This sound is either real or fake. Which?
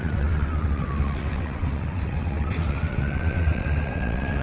fake